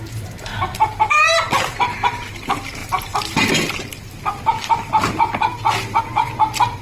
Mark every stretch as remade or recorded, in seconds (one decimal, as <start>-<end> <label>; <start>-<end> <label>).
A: 0.0-6.8 recorded